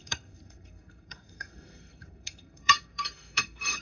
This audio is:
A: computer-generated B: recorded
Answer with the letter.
A